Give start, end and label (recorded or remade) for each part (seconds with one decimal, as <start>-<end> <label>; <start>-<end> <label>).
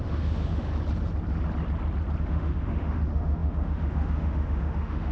0.0-0.7 remade; 0.7-2.2 recorded; 2.2-5.1 remade